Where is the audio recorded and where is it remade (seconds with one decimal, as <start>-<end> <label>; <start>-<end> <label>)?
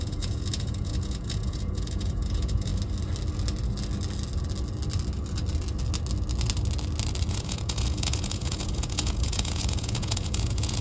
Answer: 0.0-2.7 remade; 2.7-7.3 recorded; 7.3-10.8 remade